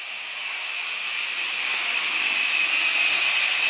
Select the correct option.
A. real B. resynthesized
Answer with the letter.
A